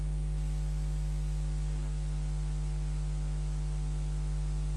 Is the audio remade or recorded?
recorded